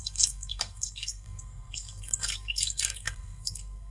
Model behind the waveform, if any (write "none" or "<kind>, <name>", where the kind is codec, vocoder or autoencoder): codec, SNAC